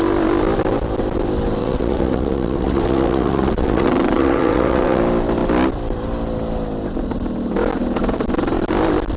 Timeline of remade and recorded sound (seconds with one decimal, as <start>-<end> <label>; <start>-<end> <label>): 0.0-1.6 recorded; 1.6-5.0 remade; 5.0-9.2 recorded